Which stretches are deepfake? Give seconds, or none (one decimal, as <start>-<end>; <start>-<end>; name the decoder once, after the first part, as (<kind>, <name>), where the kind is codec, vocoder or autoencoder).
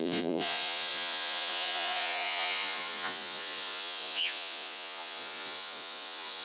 0.0-6.4 (vocoder, Vocos)